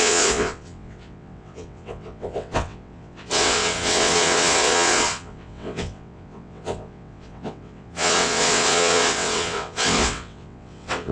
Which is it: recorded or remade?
remade